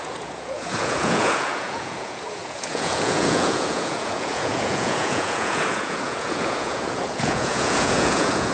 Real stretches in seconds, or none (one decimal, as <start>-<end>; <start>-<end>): none